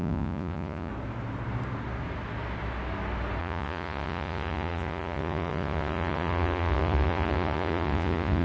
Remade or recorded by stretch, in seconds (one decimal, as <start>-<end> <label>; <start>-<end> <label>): 0.0-0.9 remade; 0.9-3.4 recorded; 3.4-8.4 remade